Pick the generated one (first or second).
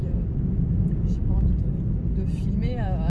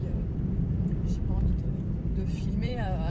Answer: second